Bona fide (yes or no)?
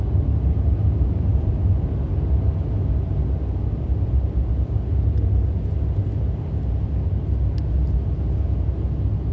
yes